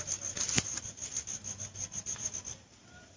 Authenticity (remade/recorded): recorded